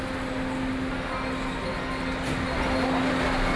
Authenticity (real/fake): real